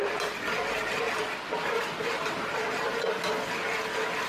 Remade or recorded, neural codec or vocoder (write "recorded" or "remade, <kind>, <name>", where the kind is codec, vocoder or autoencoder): recorded